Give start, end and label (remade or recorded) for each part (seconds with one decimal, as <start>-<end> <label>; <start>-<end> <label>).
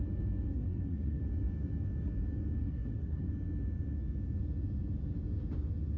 0.0-0.5 recorded; 0.5-1.2 remade; 1.2-2.6 recorded; 2.6-3.3 remade; 3.3-6.0 recorded